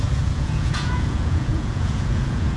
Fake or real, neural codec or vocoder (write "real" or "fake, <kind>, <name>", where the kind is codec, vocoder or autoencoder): fake, vocoder, Vocos